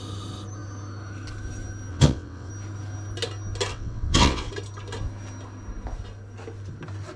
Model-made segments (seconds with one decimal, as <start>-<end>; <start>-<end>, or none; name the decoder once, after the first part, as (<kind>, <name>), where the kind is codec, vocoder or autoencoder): 1.9-2.5 (vocoder, WaveNeXt); 3.7-4.5